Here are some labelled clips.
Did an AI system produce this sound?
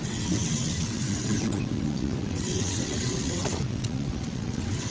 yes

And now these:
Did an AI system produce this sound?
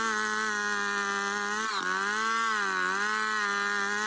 no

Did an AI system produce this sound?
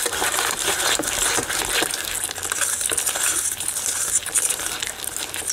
no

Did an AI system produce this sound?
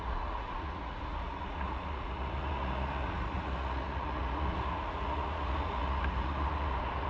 yes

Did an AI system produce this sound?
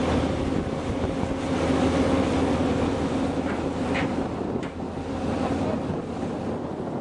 no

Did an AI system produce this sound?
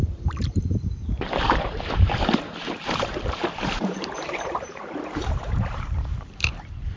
yes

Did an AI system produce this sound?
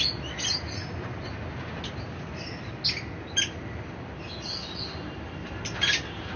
no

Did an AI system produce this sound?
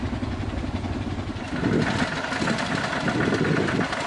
no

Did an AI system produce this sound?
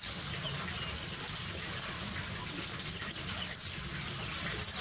no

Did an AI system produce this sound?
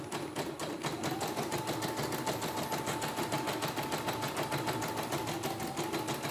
no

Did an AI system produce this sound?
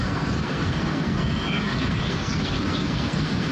yes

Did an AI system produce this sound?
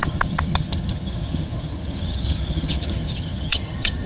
yes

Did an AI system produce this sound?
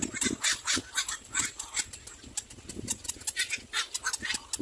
no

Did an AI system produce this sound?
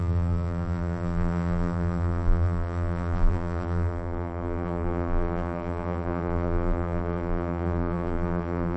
yes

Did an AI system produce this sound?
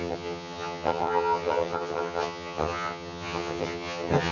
yes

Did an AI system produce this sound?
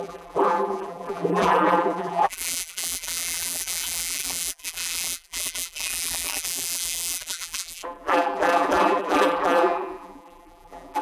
yes